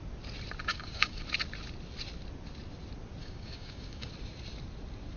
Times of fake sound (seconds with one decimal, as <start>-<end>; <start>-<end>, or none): 0.7-1.2; 3.2-4.1